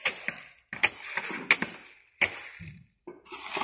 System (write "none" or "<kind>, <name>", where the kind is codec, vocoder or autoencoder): none